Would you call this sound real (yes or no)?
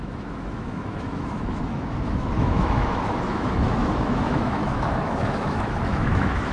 no